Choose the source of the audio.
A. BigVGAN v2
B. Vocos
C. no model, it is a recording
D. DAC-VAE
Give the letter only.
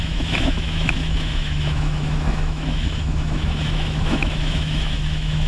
D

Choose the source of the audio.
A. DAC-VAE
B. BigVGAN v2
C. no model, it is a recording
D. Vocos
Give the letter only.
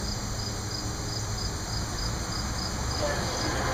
C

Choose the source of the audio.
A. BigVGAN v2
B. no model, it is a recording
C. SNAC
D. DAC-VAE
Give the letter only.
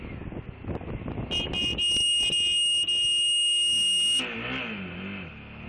B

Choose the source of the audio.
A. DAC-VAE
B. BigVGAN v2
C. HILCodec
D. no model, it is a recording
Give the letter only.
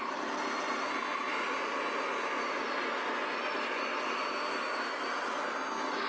D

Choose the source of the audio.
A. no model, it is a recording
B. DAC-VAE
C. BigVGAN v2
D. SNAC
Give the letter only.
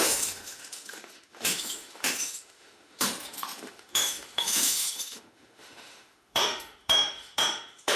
B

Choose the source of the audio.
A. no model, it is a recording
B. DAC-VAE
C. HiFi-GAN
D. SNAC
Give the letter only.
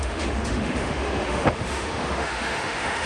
B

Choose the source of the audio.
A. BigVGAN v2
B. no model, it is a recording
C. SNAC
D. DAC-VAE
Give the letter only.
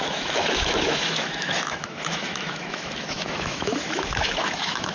D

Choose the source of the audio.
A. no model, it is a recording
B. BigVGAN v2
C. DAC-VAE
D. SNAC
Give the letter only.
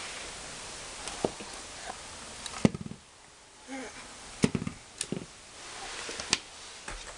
A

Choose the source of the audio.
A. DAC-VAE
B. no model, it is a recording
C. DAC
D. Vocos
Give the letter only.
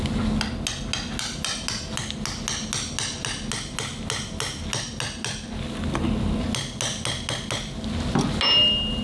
B